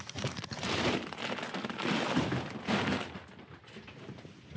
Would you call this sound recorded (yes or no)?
yes